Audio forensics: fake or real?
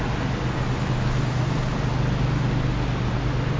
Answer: real